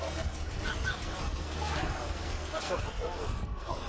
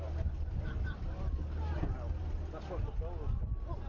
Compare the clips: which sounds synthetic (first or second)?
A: first